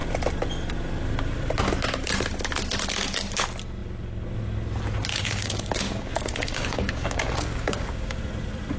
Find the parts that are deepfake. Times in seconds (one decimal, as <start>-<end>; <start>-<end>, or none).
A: 5.1-8.2